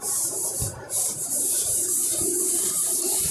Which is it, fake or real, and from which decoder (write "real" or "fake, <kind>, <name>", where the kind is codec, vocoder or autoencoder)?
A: fake, vocoder, BigVGAN v2